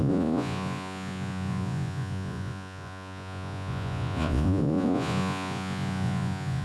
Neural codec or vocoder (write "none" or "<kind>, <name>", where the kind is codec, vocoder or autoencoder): vocoder, Vocos